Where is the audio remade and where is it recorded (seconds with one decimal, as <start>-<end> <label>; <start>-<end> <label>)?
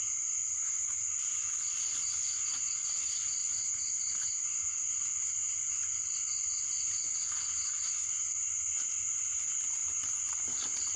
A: 0.0-11.0 recorded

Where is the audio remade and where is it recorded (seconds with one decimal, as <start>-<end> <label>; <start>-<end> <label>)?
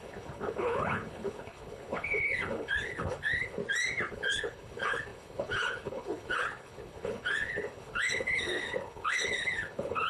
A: 0.0-3.6 remade; 3.6-4.1 recorded; 4.1-10.1 remade